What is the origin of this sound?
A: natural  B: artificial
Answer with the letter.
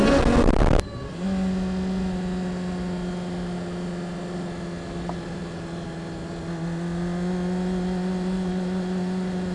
A